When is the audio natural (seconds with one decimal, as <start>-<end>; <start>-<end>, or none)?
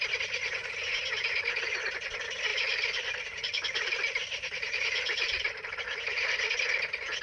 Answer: 0.0-2.5; 6.5-7.2